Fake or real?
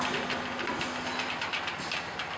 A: real